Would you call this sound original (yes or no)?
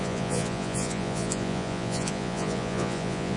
no